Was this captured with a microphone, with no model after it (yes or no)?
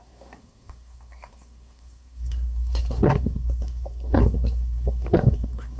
no